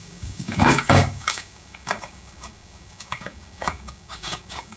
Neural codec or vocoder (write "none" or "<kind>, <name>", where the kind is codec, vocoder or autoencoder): codec, DAC